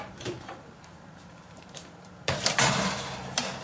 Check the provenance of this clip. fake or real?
fake